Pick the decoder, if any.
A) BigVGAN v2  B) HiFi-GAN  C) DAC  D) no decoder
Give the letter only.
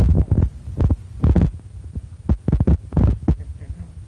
D